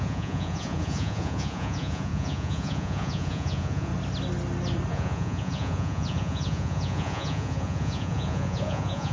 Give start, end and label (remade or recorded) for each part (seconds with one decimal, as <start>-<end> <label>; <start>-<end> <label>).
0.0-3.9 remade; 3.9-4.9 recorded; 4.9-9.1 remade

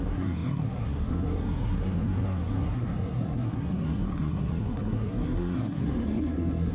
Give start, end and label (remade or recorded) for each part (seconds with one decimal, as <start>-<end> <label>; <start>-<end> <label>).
0.0-6.7 remade

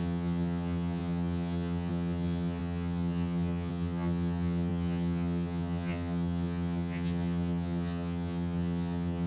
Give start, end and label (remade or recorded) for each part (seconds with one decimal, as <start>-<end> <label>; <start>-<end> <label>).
0.0-9.3 remade

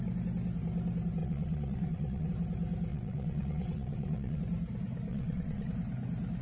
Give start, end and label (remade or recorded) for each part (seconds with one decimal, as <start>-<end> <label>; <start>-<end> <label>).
0.0-1.2 recorded; 1.2-2.3 remade; 2.3-2.9 recorded; 2.9-4.4 remade; 4.4-5.1 recorded; 5.1-5.7 remade; 5.7-6.4 recorded

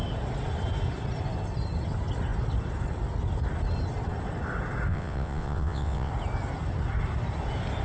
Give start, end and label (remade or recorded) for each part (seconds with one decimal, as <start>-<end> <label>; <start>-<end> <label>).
0.0-4.9 recorded; 4.9-6.1 remade; 6.1-7.8 recorded